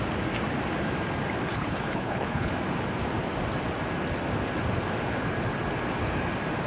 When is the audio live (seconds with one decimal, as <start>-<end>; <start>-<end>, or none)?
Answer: 0.0-1.5; 2.5-6.7